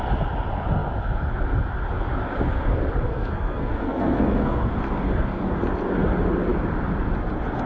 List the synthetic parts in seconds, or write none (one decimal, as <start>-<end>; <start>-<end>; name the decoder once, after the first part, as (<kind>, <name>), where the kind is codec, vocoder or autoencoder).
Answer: 3.1-4.7 (codec, SNAC)